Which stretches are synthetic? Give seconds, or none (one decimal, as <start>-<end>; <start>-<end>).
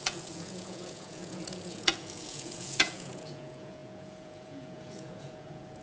0.0-5.8